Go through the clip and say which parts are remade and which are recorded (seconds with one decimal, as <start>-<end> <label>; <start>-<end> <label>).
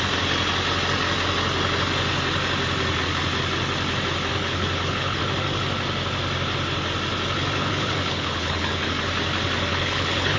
0.0-4.3 recorded; 4.3-5.2 remade; 5.2-7.6 recorded; 7.6-8.9 remade; 8.9-9.7 recorded; 9.7-10.4 remade